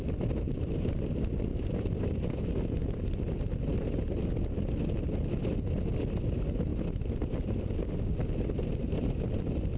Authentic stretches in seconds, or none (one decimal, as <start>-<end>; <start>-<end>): 0.0-9.8